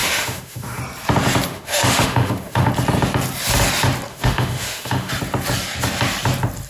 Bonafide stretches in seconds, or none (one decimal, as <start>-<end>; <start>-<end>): 0.8-1.5; 2.7-4.1; 5.1-6.7